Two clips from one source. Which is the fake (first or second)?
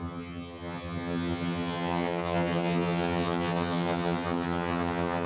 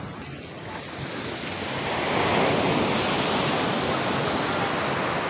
first